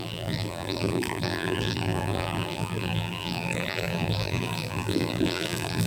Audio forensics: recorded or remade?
remade